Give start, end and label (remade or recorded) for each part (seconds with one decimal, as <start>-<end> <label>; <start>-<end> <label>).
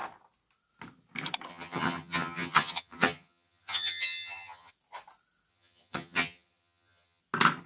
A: 0.0-1.5 recorded; 1.5-4.7 remade; 4.7-5.5 recorded; 5.5-7.2 remade; 7.2-7.7 recorded